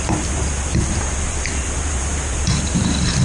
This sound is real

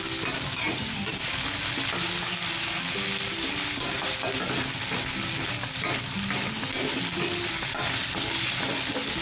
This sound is real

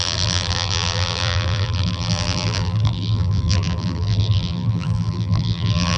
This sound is fake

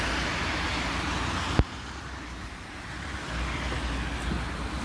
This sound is real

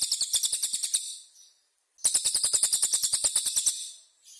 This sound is real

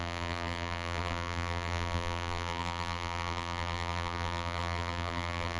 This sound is fake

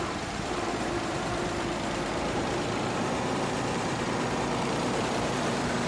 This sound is fake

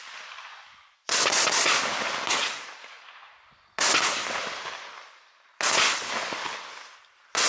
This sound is real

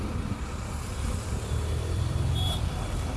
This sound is fake